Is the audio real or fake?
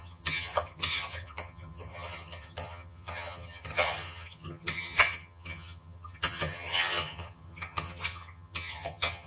fake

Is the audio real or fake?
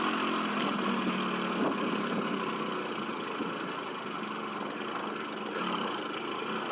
real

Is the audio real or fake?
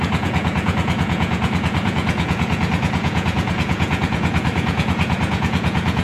fake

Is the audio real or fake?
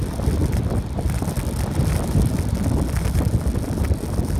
fake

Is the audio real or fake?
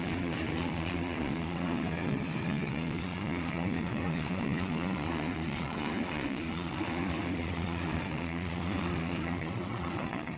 fake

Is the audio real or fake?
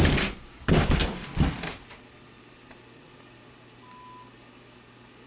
real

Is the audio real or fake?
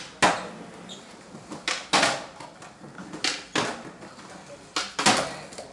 real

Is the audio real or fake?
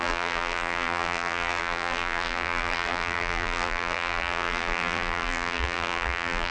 fake